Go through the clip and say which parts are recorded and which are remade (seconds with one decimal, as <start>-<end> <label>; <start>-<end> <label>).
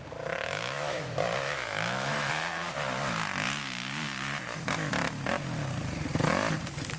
0.0-0.4 recorded; 0.4-2.3 remade; 2.3-7.0 recorded